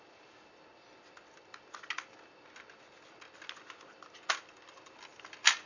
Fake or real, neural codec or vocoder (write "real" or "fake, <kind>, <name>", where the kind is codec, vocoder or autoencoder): real